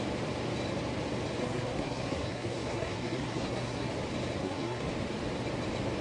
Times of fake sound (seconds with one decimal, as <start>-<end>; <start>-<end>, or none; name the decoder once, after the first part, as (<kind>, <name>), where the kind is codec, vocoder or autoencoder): 1.4-3.9 (codec, SNAC); 4.4-4.9